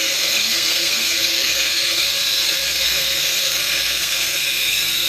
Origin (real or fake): fake